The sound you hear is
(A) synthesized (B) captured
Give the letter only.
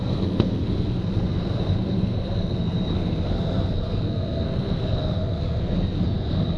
A